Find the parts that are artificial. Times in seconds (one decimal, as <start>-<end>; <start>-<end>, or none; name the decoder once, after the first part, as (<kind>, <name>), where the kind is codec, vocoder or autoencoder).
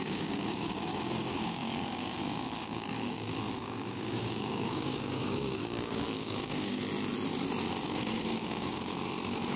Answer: 0.0-6.8 (codec, DAC); 7.7-8.9